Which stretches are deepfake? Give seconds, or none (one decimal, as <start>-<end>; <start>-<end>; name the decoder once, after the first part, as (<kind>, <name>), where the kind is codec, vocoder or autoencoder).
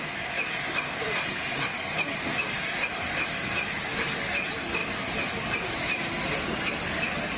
none